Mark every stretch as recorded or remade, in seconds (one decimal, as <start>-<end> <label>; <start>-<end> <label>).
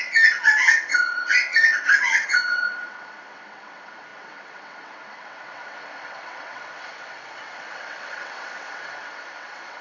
0.0-9.8 remade